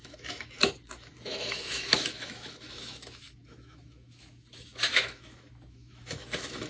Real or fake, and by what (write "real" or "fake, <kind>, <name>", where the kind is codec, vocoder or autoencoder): fake, autoencoder, DAC-VAE